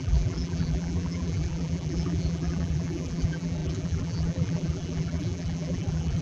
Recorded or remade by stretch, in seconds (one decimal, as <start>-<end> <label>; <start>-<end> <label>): 0.0-6.2 remade